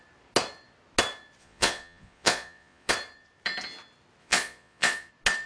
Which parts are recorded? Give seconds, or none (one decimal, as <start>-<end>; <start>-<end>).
0.0-1.4; 2.9-4.2; 5.1-5.5